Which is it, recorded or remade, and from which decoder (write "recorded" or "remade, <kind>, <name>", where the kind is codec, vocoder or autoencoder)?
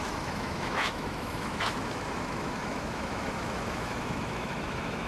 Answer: remade, autoencoder, DAC-VAE